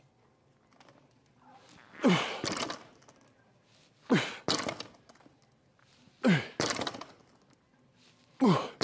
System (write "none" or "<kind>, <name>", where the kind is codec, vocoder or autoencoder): none